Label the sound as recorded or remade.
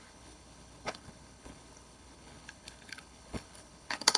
remade